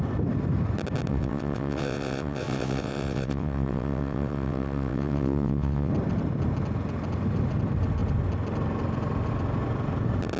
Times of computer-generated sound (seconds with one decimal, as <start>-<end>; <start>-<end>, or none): 1.1-5.9